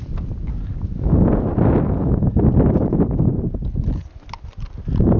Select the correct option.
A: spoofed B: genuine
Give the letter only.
B